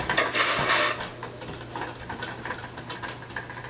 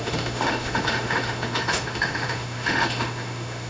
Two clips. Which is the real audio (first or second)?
first